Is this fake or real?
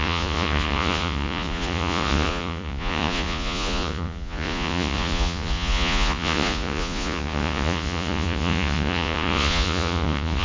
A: fake